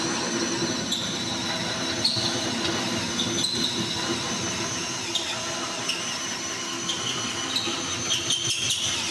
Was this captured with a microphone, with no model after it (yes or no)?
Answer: yes